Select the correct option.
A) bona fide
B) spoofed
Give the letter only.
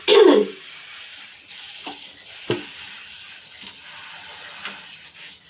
A